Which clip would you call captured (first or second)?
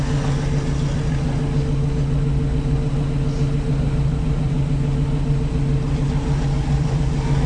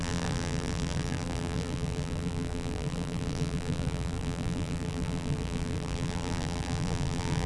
first